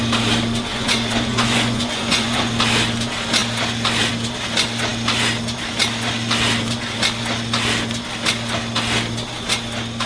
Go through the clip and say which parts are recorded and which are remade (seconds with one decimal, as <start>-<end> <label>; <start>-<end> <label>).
0.0-0.7 recorded; 0.7-2.5 remade; 2.5-10.1 recorded